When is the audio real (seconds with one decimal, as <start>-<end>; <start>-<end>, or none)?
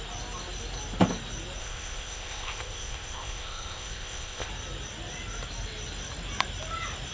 0.0-1.6; 4.5-7.1